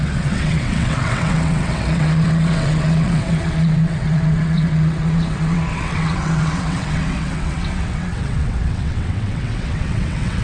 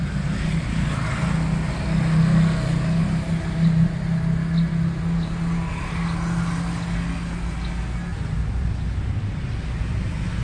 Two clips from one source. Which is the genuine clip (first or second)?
second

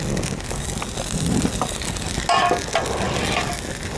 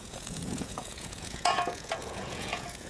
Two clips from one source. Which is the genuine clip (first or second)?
first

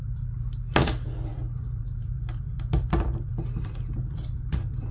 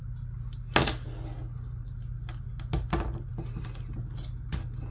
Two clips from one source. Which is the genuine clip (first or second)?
second